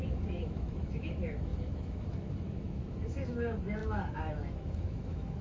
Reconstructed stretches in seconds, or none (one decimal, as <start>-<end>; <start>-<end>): 0.0-5.4